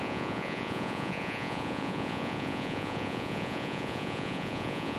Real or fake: fake